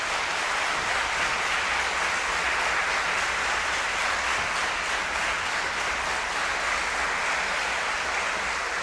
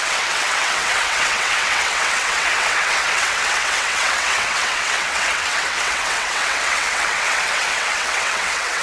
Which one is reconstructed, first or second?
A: second